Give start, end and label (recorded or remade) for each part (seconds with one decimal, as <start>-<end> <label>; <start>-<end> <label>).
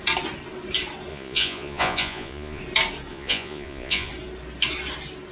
0.0-1.1 recorded; 1.1-2.6 remade; 2.6-3.1 recorded; 3.1-4.1 remade; 4.1-5.3 recorded